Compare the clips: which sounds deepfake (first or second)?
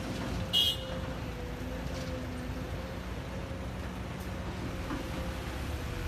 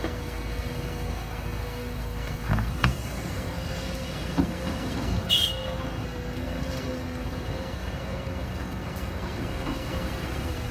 second